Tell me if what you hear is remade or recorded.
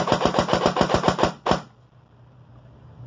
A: recorded